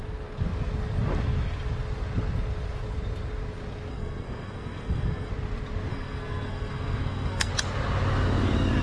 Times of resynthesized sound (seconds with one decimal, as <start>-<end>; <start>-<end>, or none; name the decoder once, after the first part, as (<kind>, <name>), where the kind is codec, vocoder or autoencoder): 3.9-5.3 (codec, SNAC); 5.9-7.5